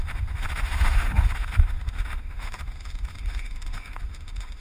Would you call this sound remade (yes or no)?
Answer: yes